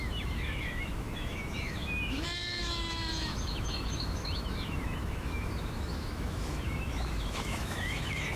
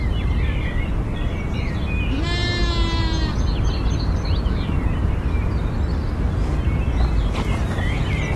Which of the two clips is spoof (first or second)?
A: first